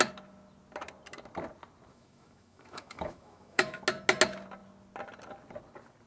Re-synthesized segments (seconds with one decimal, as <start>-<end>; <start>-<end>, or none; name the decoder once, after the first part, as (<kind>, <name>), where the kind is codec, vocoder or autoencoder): 1.9-3.8 (autoencoder, DAC-VAE)